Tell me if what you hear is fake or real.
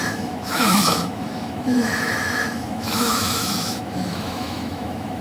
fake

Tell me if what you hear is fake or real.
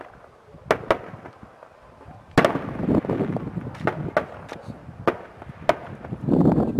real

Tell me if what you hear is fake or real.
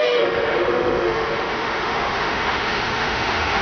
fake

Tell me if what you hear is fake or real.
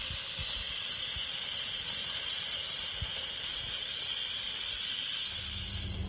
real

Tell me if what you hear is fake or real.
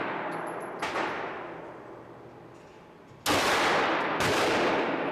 real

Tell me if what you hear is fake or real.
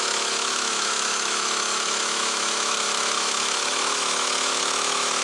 fake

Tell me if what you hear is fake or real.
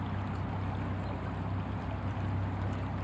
real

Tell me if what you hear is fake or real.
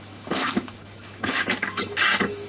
fake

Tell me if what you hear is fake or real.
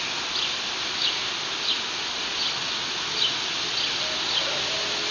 real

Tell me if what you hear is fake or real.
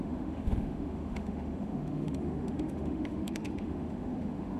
fake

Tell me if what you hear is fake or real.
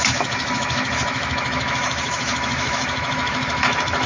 fake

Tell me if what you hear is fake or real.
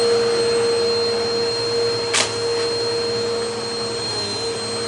real